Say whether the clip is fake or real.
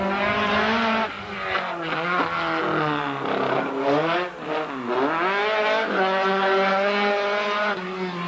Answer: real